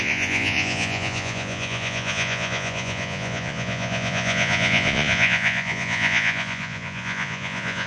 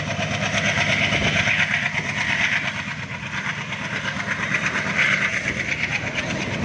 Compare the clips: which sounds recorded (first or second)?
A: second